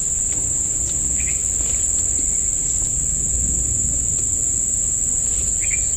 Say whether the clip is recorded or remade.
recorded